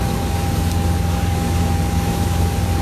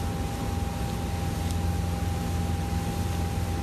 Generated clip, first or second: first